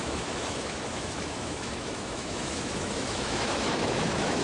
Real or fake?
fake